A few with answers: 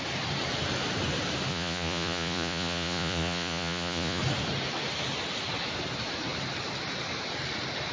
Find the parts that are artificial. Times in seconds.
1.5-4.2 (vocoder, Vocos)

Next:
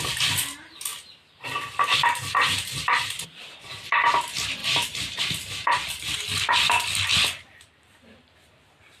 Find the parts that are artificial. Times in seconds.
0.0-0.9 (vocoder, BigVGAN v2); 2.8-4.6; 5.2-9.0

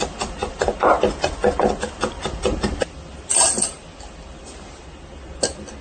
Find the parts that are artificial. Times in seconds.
3.3-3.8 (vocoder, BigVGAN v2)

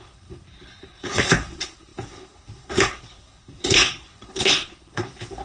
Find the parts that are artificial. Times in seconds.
0.0-5.4 (codec, HILCodec)